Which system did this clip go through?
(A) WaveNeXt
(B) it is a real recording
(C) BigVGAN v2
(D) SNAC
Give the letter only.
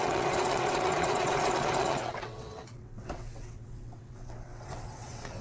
A